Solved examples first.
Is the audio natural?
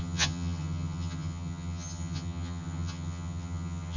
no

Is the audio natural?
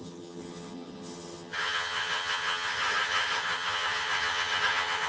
no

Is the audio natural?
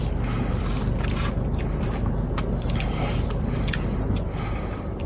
yes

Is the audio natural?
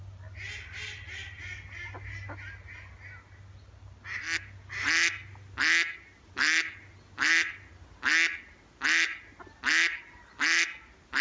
yes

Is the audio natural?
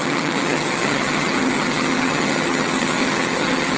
no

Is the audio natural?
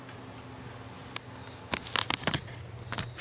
yes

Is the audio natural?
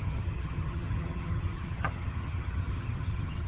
no